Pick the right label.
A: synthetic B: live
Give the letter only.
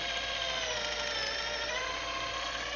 B